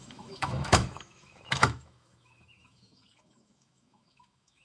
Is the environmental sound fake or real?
fake